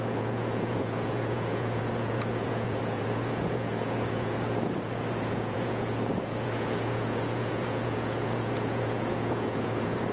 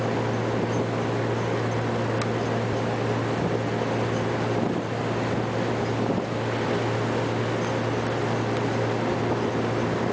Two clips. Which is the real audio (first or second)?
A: second